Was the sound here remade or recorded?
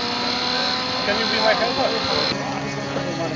recorded